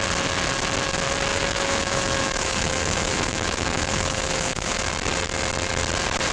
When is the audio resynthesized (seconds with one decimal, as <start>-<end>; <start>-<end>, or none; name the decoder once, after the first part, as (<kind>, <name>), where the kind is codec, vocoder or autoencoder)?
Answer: 1.3-4.9 (autoencoder, DAC-VAE)